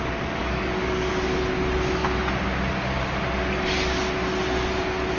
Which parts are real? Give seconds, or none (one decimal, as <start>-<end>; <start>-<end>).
0.0-0.4; 1.1-5.2

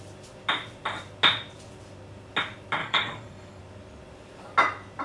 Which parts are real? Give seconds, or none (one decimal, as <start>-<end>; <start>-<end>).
0.0-2.8; 3.6-5.0